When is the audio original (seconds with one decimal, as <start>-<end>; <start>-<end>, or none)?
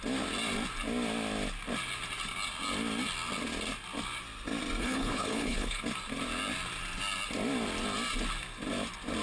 0.0-4.8; 5.8-9.2